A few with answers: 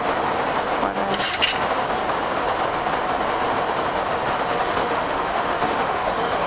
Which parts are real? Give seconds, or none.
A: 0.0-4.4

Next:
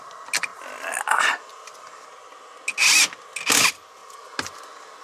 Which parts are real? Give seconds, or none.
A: 0.0-5.0

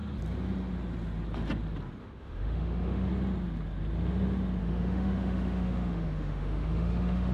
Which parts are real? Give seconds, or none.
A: 0.0-2.0; 3.1-4.6